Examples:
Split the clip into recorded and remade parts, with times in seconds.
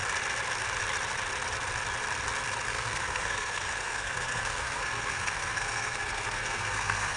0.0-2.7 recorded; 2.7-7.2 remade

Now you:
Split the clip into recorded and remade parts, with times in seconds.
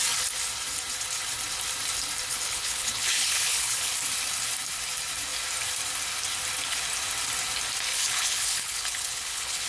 0.0-2.3 recorded; 2.3-3.9 remade; 3.9-7.9 recorded; 7.9-9.7 remade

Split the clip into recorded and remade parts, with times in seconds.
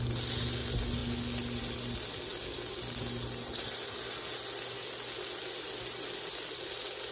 0.0-7.1 recorded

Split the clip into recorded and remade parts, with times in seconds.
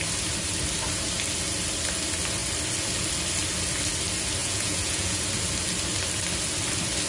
0.0-4.4 recorded; 4.4-5.2 remade; 5.2-7.1 recorded